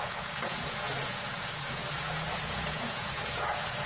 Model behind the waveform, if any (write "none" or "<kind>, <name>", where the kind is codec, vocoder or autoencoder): vocoder, Vocos